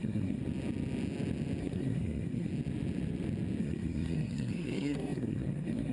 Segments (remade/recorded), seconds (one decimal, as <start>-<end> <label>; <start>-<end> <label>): 0.0-0.4 remade; 0.4-1.6 recorded; 1.6-2.5 remade; 2.5-3.6 recorded; 3.6-5.9 remade